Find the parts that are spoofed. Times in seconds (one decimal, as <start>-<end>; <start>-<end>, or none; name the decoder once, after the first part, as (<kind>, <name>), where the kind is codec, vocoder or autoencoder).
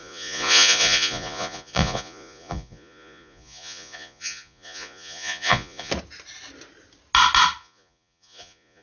0.0-5.9 (vocoder, Vocos); 7.6-8.8